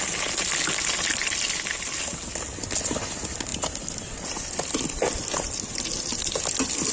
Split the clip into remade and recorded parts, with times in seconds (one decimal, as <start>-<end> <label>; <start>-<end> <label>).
0.0-3.5 recorded; 3.5-4.4 remade; 4.4-6.9 recorded